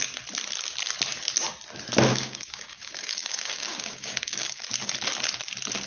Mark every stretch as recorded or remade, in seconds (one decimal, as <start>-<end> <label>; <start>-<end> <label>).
0.0-2.1 recorded; 2.1-4.6 remade; 4.6-5.9 recorded